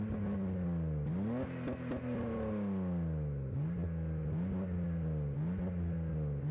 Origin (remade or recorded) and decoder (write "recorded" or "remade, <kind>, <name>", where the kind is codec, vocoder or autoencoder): recorded